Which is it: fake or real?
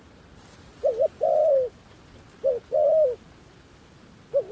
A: real